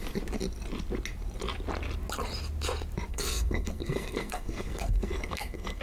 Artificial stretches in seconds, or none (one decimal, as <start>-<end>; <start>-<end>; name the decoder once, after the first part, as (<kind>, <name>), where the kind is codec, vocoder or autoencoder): 3.1-5.8 (codec, SNAC)